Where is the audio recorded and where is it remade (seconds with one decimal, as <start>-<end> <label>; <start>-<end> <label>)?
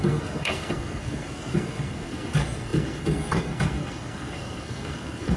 0.0-5.4 remade